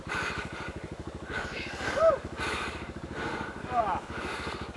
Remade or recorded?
remade